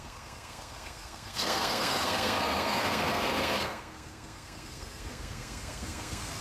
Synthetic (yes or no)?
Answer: yes